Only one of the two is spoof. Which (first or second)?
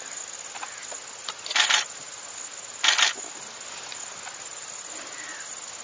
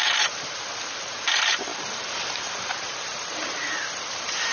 second